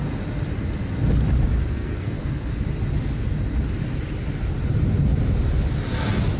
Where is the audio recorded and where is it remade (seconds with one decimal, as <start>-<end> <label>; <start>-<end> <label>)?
0.0-1.7 recorded; 1.7-2.6 remade; 2.6-6.4 recorded